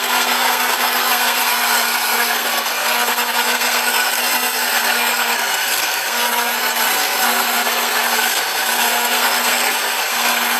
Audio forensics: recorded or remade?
remade